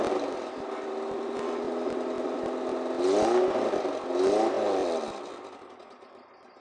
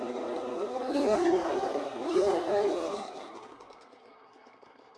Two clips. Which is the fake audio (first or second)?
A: second